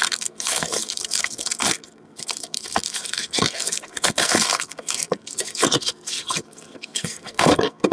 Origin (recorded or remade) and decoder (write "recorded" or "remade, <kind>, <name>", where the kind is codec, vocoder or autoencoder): remade, codec, SNAC